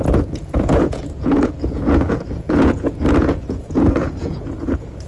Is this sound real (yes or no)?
no